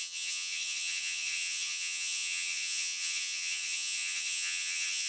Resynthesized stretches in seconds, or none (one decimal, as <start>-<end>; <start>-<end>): 0.0-5.1